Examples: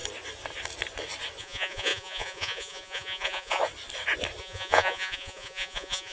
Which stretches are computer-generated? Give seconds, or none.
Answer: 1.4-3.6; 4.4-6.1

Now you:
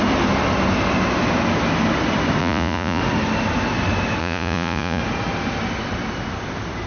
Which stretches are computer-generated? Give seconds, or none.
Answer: 2.4-3.0; 4.2-5.0

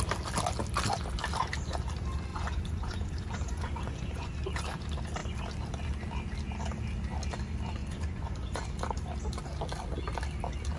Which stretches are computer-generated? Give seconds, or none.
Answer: 2.3-4.3; 7.8-8.6

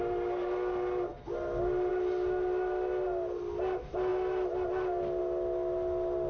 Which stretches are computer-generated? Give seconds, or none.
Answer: none

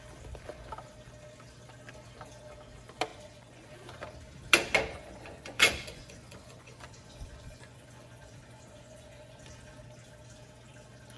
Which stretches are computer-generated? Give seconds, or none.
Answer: 3.1-3.7; 4.9-9.4